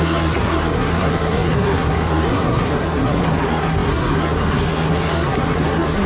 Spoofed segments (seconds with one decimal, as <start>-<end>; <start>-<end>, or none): 0.0-6.1